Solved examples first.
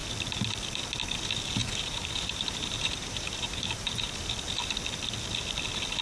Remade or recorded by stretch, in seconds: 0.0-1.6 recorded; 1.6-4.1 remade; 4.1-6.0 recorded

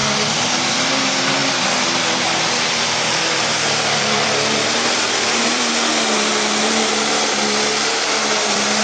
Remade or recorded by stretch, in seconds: 0.0-8.8 remade